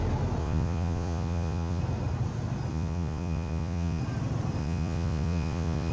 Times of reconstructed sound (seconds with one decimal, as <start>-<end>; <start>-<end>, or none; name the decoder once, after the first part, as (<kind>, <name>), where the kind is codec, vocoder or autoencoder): 0.4-1.8 (vocoder, Vocos); 2.7-4.0; 4.6-5.9